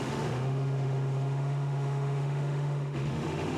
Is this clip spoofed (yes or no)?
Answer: yes